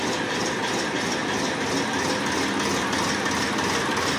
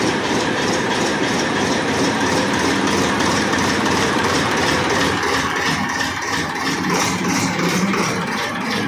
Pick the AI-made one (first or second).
second